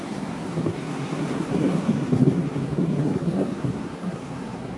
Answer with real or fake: fake